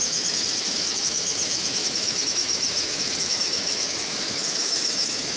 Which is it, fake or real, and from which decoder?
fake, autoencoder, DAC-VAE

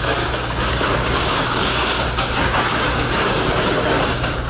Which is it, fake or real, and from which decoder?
fake, codec, DAC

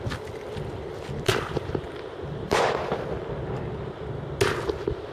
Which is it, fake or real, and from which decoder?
real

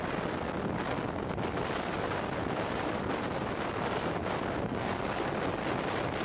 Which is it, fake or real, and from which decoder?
real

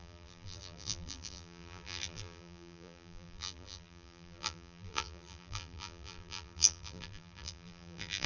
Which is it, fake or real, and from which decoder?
fake, vocoder, BigVGAN v2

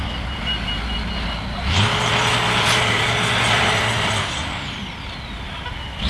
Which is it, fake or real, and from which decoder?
real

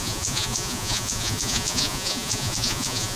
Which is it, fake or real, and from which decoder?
fake, vocoder, Vocos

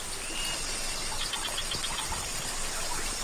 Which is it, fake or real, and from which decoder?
real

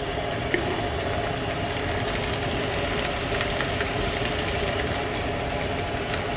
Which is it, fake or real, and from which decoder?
real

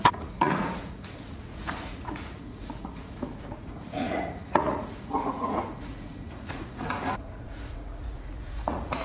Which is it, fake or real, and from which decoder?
fake, vocoder, Vocos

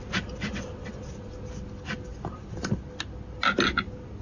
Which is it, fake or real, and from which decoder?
real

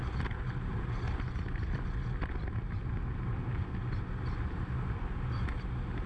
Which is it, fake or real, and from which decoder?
real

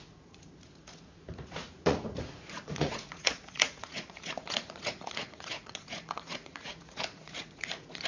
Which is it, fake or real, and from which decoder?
fake, vocoder, Vocos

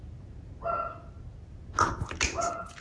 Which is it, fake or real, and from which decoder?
real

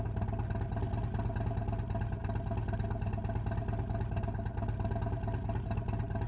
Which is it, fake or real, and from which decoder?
real